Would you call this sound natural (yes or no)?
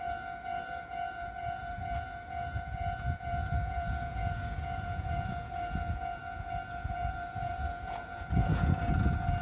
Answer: no